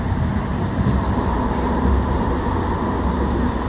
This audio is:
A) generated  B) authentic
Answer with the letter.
B